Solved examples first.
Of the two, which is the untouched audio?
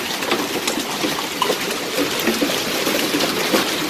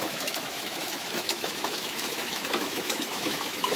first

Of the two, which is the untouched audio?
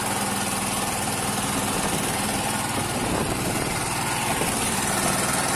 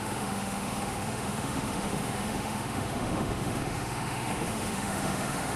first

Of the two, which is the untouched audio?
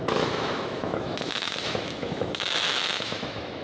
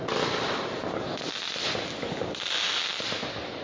second